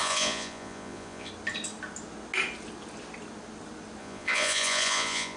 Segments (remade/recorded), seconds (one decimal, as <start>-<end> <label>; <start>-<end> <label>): 0.0-1.3 remade; 1.3-4.0 recorded; 4.0-5.4 remade